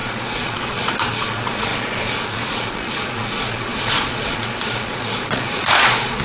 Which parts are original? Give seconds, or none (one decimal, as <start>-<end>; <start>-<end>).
none